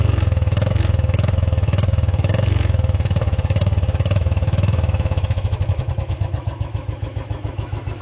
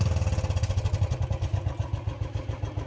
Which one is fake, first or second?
first